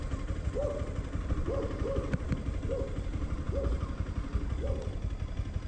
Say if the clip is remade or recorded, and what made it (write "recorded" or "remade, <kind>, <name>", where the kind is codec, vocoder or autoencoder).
recorded